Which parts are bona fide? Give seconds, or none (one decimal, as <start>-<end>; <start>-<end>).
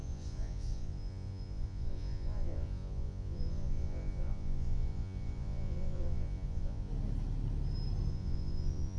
6.9-8.1